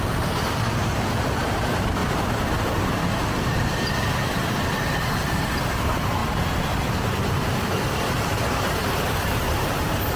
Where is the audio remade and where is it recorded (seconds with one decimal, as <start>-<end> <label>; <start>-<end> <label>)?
0.0-2.0 remade; 2.0-3.3 recorded; 3.3-3.7 remade; 3.7-5.6 recorded; 5.6-6.2 remade; 6.2-8.0 recorded; 8.0-10.2 remade